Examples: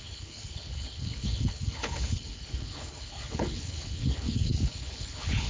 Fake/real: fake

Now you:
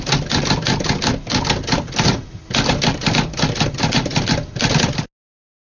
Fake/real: real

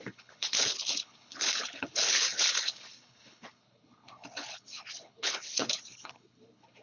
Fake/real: fake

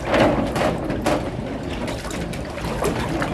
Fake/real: real